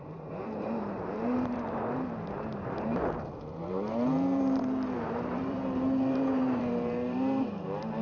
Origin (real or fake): fake